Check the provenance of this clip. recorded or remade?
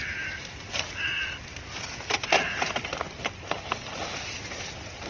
recorded